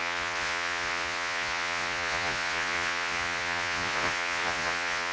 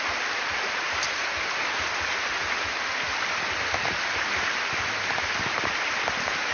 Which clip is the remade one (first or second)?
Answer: first